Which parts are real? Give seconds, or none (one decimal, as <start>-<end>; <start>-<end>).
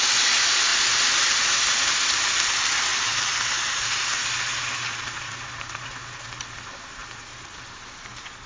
0.0-2.9; 6.2-7.0; 7.6-8.5